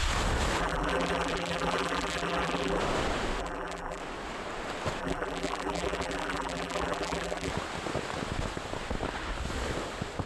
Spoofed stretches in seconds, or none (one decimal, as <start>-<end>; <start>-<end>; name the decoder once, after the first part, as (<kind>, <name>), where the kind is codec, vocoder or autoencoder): 0.6-2.8 (vocoder, BigVGAN v2); 3.4-4.0; 5.0-7.5